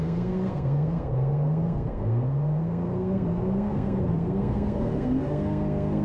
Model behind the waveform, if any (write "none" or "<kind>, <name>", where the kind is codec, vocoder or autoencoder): codec, SNAC